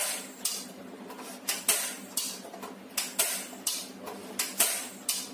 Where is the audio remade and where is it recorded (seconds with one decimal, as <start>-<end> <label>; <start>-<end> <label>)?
0.0-5.3 recorded